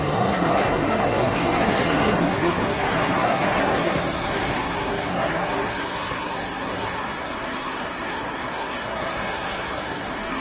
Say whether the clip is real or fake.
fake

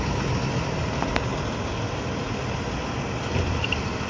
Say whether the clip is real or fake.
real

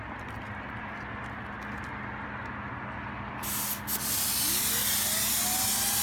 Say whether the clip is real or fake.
real